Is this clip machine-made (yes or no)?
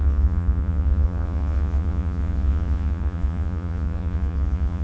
yes